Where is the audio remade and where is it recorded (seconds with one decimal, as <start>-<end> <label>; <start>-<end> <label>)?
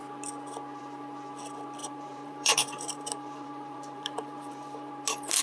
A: 0.0-1.8 recorded; 1.8-4.9 remade; 4.9-5.4 recorded